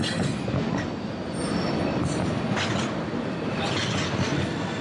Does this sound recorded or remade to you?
recorded